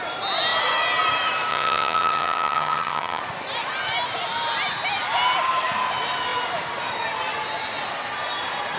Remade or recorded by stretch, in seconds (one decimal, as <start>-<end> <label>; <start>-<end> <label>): 0.0-1.5 recorded; 1.5-3.2 remade; 3.2-8.8 recorded